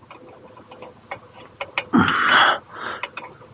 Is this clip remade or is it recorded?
recorded